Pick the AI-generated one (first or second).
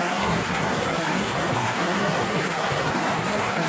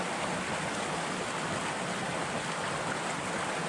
first